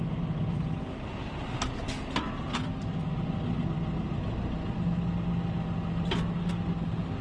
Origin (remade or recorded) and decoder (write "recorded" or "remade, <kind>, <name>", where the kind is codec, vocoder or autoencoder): recorded